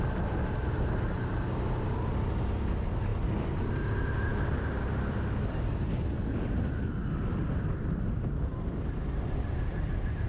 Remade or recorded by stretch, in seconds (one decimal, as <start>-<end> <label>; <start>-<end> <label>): 0.0-10.3 recorded